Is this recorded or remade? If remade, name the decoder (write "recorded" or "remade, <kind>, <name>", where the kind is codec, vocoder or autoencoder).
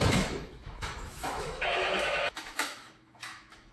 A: remade, autoencoder, DAC-VAE